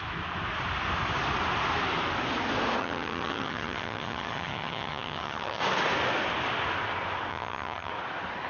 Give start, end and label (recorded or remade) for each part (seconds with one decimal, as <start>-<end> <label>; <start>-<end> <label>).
0.0-2.8 recorded; 2.8-5.6 remade; 5.6-7.3 recorded; 7.3-7.9 remade; 7.9-8.5 recorded